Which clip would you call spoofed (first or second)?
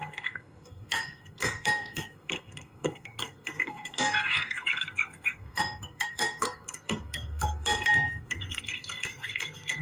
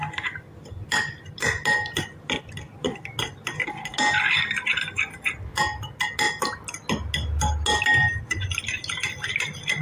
first